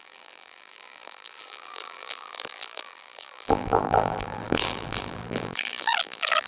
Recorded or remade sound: remade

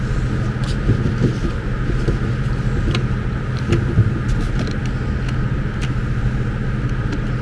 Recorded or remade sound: recorded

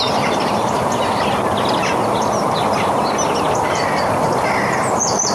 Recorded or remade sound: recorded